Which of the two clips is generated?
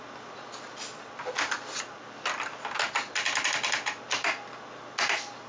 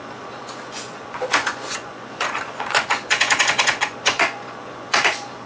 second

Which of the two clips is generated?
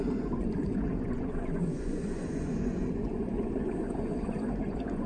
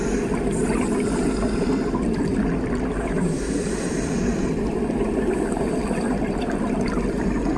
first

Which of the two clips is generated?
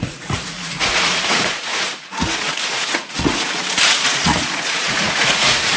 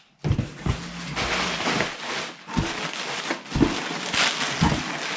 first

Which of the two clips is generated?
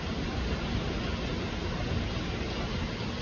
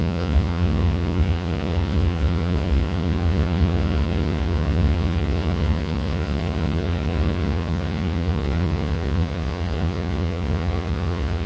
second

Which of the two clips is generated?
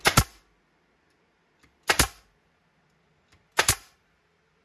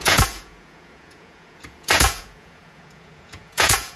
second